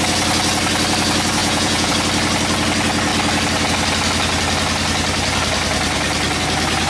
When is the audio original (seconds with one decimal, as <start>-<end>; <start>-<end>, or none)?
0.0-1.4; 1.9-6.9